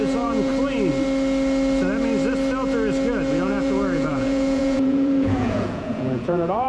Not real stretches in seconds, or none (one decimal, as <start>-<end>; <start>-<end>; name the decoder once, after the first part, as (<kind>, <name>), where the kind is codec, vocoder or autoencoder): 0.0-0.5 (vocoder, Vocos); 3.3-6.7